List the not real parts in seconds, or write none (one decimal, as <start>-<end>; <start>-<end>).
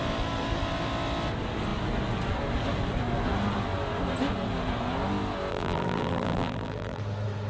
5.5-7.0